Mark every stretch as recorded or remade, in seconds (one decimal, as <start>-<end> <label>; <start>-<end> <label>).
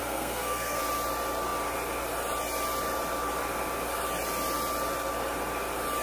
0.0-0.8 remade; 0.8-6.0 recorded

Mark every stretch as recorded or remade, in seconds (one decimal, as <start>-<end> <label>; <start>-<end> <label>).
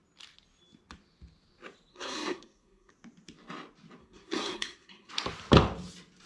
0.0-1.9 recorded; 1.9-2.9 remade; 2.9-4.0 recorded; 4.0-5.1 remade; 5.1-6.3 recorded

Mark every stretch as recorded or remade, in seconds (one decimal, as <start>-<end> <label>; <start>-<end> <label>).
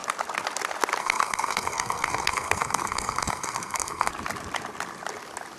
0.0-1.0 recorded; 1.0-4.1 remade; 4.1-5.6 recorded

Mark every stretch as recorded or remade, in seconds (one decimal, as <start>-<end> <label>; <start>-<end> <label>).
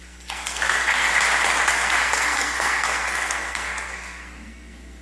0.0-1.1 remade; 1.1-1.7 recorded; 1.7-5.0 remade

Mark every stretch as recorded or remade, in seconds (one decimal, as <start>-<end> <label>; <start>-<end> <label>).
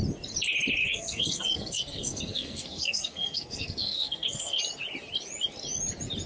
0.0-0.8 recorded; 0.8-4.6 remade; 4.6-6.3 recorded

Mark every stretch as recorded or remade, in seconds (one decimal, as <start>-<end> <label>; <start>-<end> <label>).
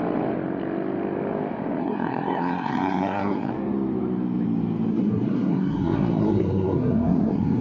0.0-1.8 recorded; 1.8-3.5 remade; 3.5-4.9 recorded; 4.9-7.6 remade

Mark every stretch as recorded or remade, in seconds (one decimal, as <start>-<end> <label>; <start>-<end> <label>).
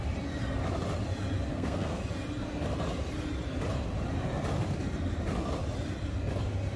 0.0-1.5 recorded; 1.5-2.0 remade; 2.0-6.8 recorded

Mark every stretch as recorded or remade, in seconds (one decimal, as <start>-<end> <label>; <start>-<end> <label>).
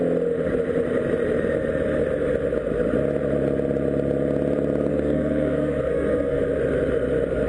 0.0-4.9 recorded; 4.9-6.4 remade; 6.4-7.5 recorded